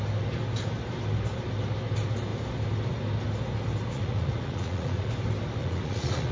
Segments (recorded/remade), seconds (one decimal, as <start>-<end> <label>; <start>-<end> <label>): 0.0-3.9 recorded; 3.9-5.1 remade; 5.1-5.6 recorded; 5.6-6.3 remade